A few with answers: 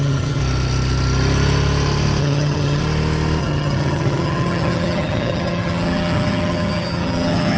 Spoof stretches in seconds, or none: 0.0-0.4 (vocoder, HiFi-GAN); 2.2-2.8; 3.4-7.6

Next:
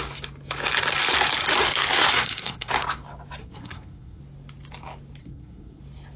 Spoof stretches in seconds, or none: 2.0-2.7 (codec, SNAC); 3.4-4.2; 5.2-5.8

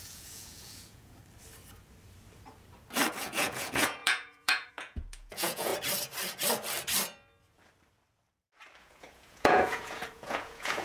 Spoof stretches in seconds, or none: 0.0-1.2 (vocoder, Vocos); 3.2-5.7; 8.8-10.8

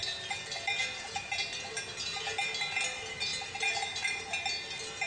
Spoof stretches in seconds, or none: none

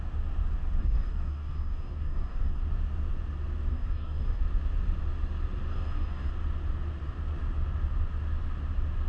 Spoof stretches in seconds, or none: 0.8-2.6 (codec, DAC); 3.7-4.4; 5.7-6.3